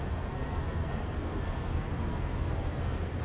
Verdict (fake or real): fake